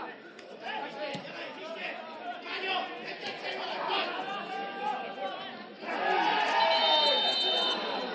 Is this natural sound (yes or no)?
yes